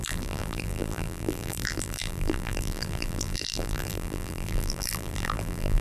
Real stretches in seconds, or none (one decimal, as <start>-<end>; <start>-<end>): none